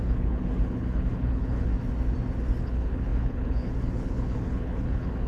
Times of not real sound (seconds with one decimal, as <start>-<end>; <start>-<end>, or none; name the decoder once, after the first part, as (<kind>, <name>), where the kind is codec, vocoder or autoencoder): 0.0-1.7 (codec, HILCodec); 2.6-5.3